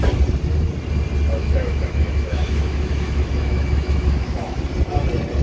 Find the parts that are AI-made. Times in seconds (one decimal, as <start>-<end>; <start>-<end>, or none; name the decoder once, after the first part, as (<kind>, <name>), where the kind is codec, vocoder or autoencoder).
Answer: 1.4-4.6 (autoencoder, DAC-VAE)